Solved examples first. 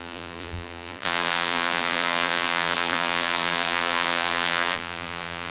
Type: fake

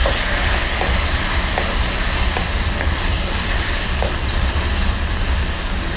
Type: fake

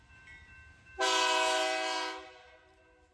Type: fake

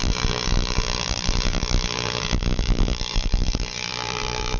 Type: fake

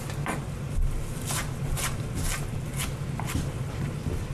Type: real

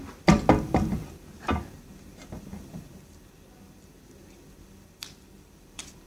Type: fake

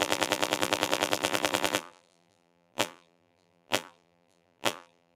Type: fake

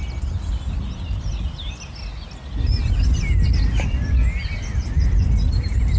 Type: real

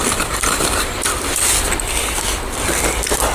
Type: fake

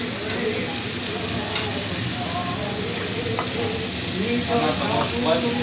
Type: real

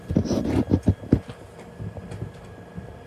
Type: real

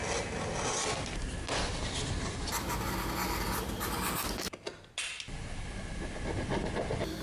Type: real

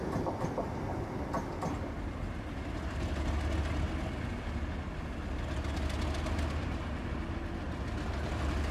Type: real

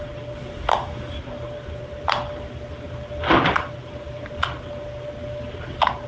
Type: real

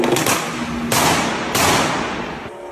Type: real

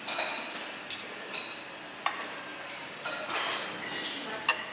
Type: real